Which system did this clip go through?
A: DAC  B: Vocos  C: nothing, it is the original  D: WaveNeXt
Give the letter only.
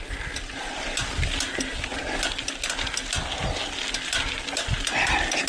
C